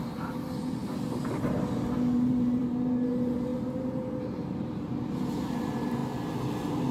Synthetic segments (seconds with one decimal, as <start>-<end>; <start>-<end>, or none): 0.0-6.0

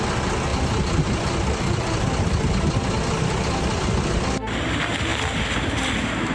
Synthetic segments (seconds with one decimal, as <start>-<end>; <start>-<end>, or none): 0.5-2.7

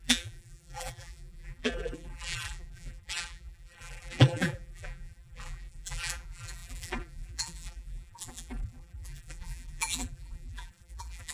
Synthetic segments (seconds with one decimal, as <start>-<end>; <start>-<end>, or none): 0.0-11.3

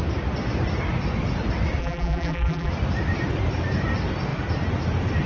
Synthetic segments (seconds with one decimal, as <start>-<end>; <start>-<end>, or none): 1.8-2.7

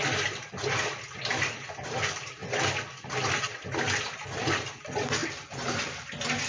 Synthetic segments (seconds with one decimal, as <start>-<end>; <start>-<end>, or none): 2.4-4.1

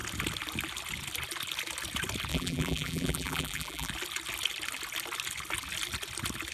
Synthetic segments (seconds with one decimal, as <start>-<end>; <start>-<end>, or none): 2.3-3.9

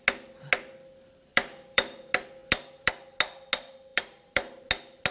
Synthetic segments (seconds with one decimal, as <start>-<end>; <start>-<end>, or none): 1.3-2.0; 2.4-2.9; 3.9-4.6